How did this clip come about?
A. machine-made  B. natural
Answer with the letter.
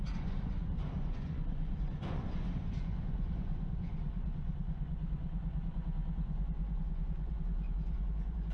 A